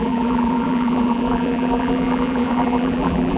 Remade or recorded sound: remade